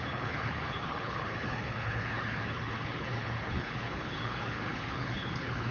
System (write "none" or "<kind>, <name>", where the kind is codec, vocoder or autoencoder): codec, HILCodec